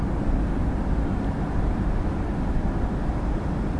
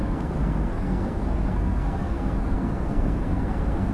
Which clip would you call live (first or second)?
first